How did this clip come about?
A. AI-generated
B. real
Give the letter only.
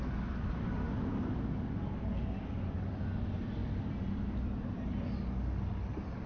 B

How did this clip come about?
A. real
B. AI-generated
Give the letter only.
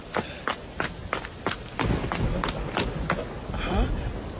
A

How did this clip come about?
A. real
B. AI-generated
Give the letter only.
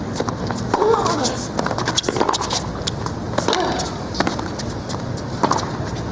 A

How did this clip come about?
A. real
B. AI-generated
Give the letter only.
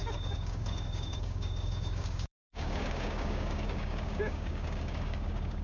B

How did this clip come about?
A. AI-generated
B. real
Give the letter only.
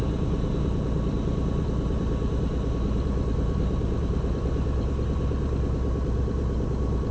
B